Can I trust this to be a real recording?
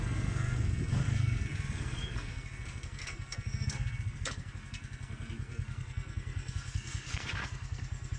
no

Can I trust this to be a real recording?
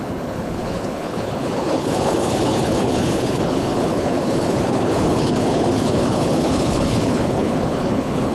no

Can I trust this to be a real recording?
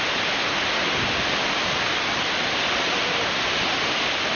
yes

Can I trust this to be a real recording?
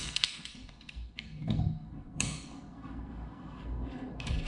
no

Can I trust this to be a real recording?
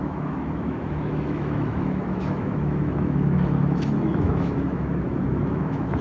no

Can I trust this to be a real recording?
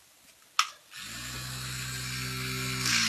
yes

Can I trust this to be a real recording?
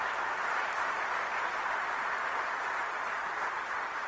yes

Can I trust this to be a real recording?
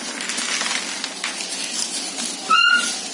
yes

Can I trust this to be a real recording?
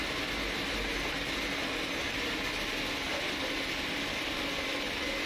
yes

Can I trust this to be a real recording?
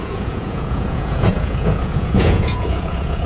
no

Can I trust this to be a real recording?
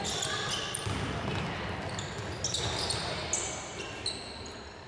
yes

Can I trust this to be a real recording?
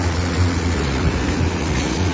no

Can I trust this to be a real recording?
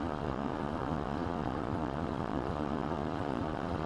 no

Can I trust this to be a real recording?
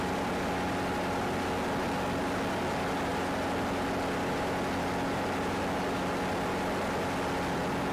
yes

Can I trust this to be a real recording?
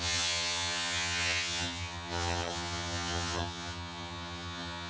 no